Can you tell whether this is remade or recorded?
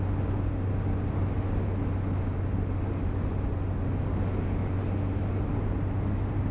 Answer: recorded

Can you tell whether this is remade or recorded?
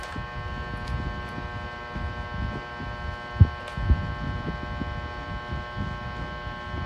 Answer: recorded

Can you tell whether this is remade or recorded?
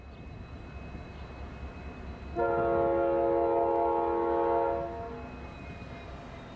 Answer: recorded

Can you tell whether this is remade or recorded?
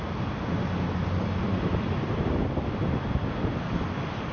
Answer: recorded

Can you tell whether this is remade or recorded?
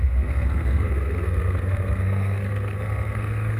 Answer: remade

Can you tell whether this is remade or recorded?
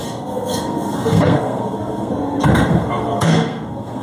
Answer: remade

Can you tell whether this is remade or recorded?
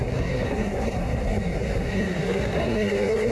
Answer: remade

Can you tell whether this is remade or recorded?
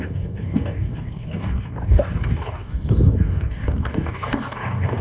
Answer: remade